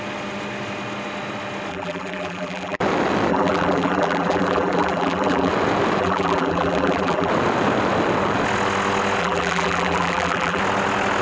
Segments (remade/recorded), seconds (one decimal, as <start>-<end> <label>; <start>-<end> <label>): 0.0-1.7 recorded; 1.7-2.8 remade; 2.8-3.3 recorded; 3.3-5.5 remade; 5.5-6.0 recorded; 6.0-7.3 remade; 7.3-9.2 recorded; 9.2-10.6 remade; 10.6-11.2 recorded